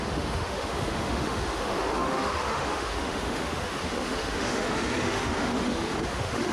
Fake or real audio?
fake